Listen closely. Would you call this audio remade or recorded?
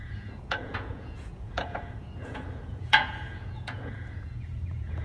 remade